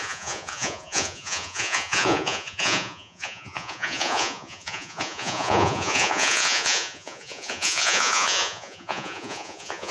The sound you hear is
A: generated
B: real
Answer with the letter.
A